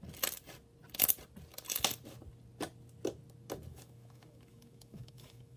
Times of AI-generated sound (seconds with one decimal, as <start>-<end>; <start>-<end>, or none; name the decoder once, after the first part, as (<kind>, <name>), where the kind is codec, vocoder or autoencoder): 3.7-5.6 (autoencoder, DAC-VAE)